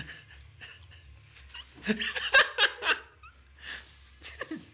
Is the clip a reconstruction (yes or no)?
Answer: no